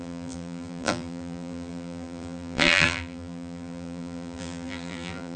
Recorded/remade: remade